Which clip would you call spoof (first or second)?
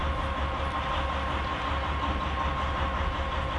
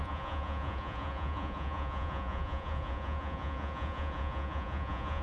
second